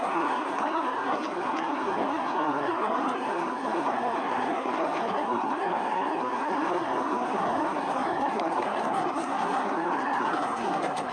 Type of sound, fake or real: fake